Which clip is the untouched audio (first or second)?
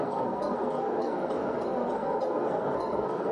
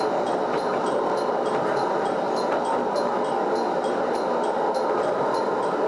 second